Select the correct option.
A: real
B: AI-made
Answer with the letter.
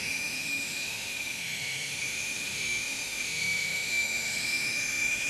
B